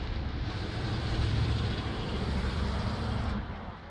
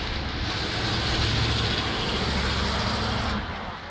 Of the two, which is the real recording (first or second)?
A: second